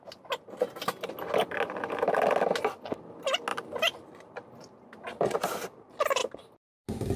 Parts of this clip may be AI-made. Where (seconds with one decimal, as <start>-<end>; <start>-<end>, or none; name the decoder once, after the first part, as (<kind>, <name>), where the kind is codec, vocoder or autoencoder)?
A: 3.5-5.6 (vocoder, BigVGAN v2)

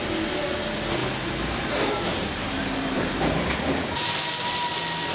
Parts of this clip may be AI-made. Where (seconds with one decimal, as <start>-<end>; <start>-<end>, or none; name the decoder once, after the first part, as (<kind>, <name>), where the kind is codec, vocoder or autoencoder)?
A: 1.0-4.1 (vocoder, BigVGAN v2)

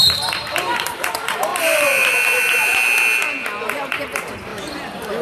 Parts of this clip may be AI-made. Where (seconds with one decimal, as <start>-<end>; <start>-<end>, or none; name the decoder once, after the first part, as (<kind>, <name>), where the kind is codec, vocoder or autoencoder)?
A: 0.0-2.7 (vocoder, BigVGAN v2); 3.9-4.5

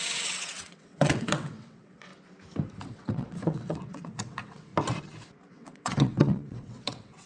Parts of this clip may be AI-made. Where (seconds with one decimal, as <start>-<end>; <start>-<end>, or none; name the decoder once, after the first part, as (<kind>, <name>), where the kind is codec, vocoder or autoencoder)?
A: 0.0-2.1 (vocoder, WaveNeXt); 2.9-4.7; 5.5-7.3